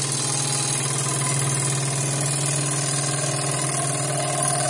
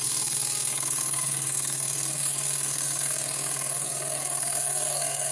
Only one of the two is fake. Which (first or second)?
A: second